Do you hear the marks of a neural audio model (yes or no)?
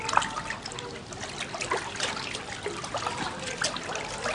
no